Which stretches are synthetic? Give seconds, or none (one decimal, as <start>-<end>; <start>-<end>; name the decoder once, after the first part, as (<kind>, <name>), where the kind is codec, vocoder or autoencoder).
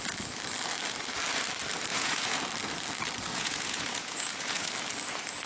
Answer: 1.9-2.4 (vocoder, Vocos); 3.3-4.7